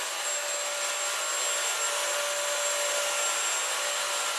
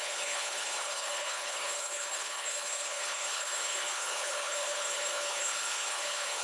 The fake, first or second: second